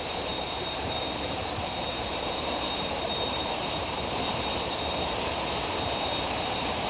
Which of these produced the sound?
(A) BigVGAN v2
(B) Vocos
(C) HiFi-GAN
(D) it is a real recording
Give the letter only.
A